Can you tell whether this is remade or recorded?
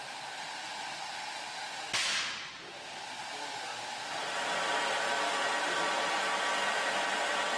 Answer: recorded